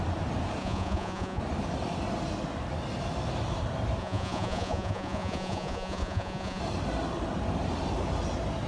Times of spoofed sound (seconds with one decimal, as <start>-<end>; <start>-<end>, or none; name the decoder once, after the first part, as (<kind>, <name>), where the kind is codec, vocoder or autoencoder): 0.6-1.4 (vocoder, Vocos); 4.0-6.6